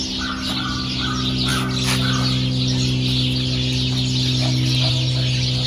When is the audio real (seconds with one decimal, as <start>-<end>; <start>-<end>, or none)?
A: 0.0-5.7